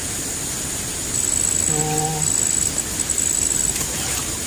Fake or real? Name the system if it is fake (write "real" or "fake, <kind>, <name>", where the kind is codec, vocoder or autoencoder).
real